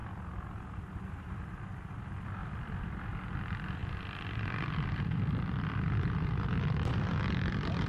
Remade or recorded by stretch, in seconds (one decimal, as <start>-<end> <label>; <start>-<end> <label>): 0.0-2.4 recorded; 2.4-3.1 remade; 3.1-3.8 recorded; 3.8-7.1 remade; 7.1-7.9 recorded